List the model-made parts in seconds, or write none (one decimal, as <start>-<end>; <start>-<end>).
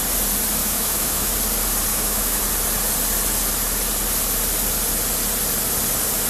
0.6-1.3; 1.9-2.4